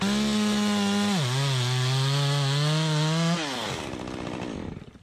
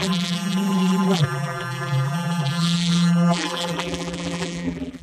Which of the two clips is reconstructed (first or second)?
second